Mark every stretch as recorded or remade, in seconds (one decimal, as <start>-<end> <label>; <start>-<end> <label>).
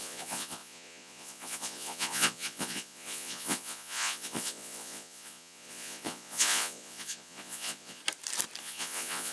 0.0-8.0 remade; 8.0-8.6 recorded; 8.6-9.3 remade